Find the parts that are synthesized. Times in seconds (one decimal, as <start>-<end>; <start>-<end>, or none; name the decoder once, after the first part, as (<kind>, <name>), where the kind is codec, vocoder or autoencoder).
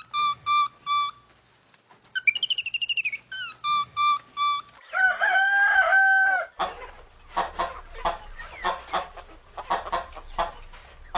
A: 8.3-8.9 (vocoder, Vocos)